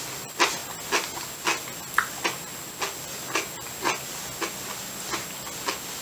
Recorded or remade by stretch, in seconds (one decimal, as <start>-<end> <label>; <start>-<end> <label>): 0.0-6.0 recorded